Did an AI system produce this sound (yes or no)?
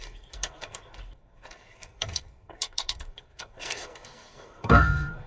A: yes